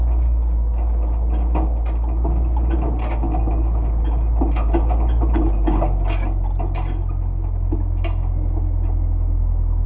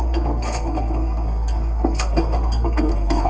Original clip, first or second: first